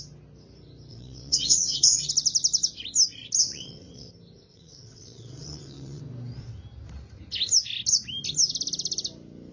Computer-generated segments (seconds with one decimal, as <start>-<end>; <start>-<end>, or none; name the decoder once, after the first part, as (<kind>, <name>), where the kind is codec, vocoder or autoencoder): 0.9-2.1 (vocoder, WaveNeXt); 3.4-4.1; 4.5-6.0